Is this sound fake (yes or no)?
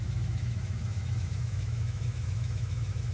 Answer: yes